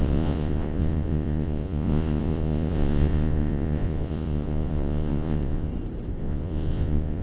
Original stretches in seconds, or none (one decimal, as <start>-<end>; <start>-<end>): 5.7-6.2